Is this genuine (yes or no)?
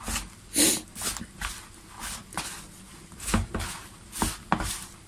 yes